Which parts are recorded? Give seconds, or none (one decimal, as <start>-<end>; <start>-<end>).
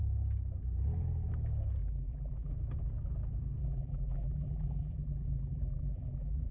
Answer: 0.0-1.8; 2.5-3.6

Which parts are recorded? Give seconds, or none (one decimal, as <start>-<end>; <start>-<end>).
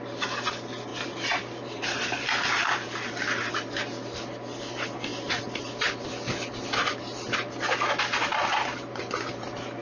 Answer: 0.0-0.9; 3.8-8.3; 9.0-9.8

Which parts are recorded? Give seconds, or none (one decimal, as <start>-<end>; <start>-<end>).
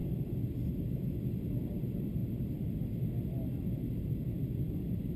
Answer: 0.0-2.2; 2.8-5.2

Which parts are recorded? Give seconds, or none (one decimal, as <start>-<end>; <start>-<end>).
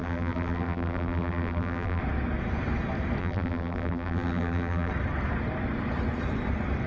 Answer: 2.0-3.2; 4.9-6.9